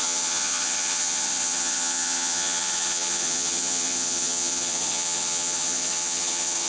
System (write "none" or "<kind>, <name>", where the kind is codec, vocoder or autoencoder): vocoder, HiFi-GAN